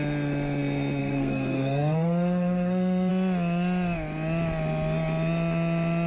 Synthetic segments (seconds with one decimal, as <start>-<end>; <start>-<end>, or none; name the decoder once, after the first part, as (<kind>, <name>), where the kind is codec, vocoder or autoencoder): 1.0-3.1 (codec, SNAC)